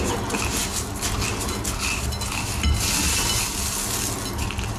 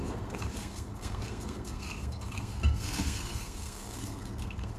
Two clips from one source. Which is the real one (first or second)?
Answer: first